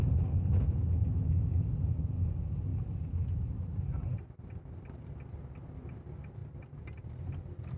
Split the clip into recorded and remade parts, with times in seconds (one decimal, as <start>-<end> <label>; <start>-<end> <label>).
0.0-7.8 recorded